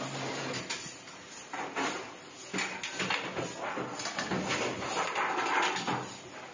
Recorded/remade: recorded